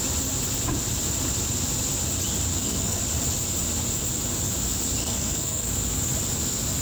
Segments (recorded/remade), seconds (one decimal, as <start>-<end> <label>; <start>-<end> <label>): 0.0-2.5 recorded; 2.5-3.0 remade; 3.0-5.0 recorded; 5.0-5.7 remade; 5.7-6.8 recorded

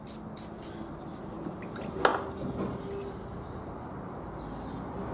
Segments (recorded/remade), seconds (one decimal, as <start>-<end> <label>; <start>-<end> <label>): 0.0-5.1 recorded

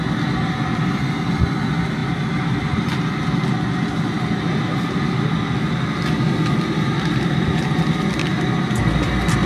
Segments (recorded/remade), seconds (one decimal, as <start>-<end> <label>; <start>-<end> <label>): 0.0-9.5 recorded